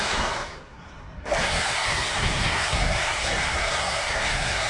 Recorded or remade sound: remade